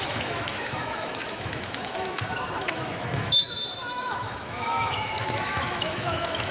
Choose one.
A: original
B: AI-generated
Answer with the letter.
B